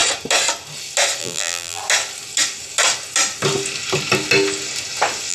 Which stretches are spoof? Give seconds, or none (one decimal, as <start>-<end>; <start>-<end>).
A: 1.2-1.8